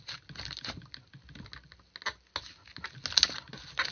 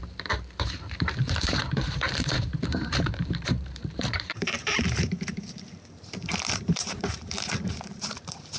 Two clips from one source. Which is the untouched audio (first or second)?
first